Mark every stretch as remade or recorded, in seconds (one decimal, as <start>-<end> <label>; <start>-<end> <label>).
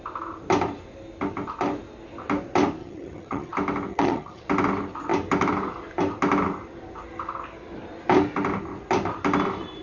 0.0-2.8 recorded; 2.8-3.5 remade; 3.5-3.9 recorded; 3.9-4.4 remade; 4.4-9.8 recorded